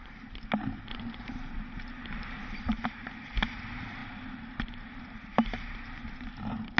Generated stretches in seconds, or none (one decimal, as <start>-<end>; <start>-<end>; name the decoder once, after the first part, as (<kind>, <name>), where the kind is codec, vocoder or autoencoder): 0.9-2.7 (vocoder, BigVGAN v2); 4.0-5.0